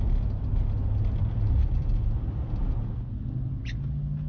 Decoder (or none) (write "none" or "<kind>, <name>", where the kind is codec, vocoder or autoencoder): none